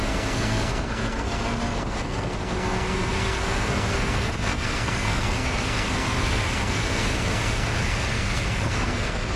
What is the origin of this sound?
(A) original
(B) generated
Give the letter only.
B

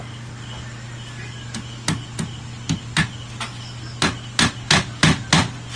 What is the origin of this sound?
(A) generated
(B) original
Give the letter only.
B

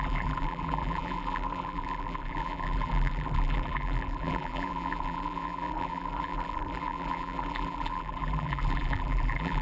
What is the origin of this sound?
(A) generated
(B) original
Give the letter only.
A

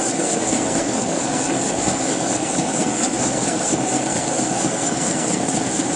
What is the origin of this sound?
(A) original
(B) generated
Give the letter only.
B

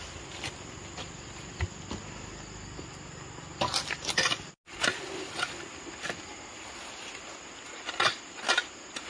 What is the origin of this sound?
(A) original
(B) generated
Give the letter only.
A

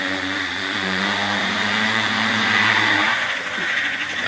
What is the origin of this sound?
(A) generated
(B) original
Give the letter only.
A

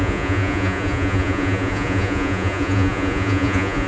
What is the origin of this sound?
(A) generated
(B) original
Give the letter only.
A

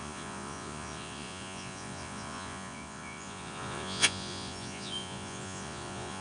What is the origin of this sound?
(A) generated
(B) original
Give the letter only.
A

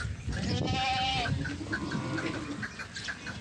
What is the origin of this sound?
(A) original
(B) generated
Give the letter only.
A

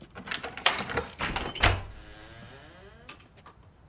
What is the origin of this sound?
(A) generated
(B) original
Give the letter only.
B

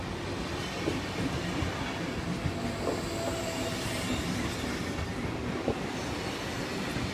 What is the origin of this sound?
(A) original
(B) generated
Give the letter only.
A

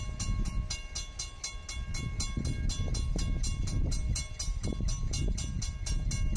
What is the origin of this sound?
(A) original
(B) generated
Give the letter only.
A